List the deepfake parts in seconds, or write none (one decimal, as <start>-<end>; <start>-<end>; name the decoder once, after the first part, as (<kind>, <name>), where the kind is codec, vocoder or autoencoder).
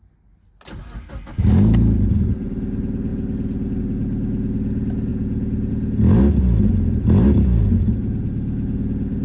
5.1-5.7 (vocoder, Vocos)